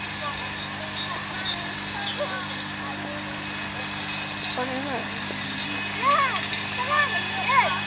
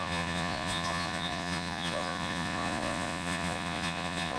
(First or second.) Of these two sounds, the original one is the first